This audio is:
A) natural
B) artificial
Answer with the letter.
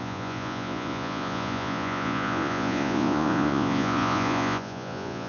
B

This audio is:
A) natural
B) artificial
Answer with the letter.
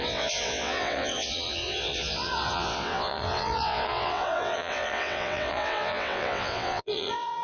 B